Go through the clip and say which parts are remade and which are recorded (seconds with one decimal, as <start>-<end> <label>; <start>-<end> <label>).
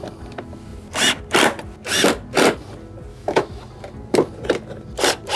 0.0-3.1 recorded; 3.1-3.6 remade; 3.6-5.4 recorded